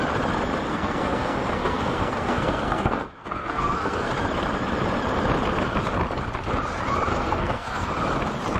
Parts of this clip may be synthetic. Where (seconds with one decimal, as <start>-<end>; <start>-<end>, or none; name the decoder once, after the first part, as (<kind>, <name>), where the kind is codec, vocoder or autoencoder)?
0.7-4.1 (codec, SNAC); 7.1-7.9